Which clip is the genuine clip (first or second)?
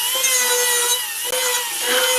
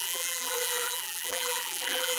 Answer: first